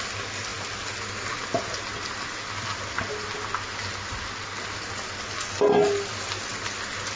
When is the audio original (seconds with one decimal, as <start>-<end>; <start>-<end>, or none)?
0.0-7.2